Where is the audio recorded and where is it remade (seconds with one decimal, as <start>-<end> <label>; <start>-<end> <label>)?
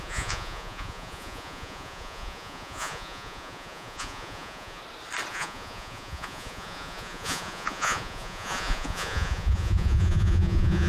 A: 0.0-4.8 remade; 4.8-5.3 recorded; 5.3-10.9 remade